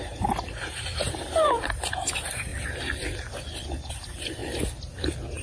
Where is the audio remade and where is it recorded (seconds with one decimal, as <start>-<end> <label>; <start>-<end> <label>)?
0.0-2.5 remade; 2.5-3.9 recorded; 3.9-4.4 remade; 4.4-5.4 recorded